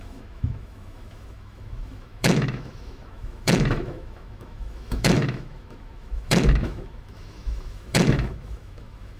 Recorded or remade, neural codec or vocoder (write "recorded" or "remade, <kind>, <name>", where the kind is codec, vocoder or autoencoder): remade, autoencoder, DAC-VAE